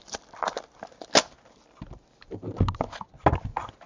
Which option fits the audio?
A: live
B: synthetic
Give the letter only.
A